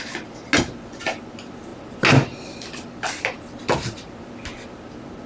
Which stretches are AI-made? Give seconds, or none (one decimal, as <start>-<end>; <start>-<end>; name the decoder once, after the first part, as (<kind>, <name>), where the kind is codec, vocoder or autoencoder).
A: none